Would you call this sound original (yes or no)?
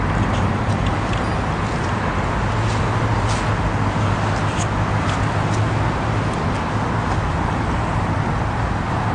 yes